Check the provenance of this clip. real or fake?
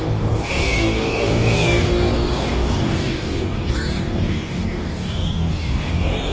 fake